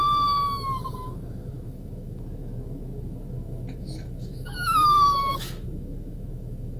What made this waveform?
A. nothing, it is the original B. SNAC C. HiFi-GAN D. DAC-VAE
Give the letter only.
D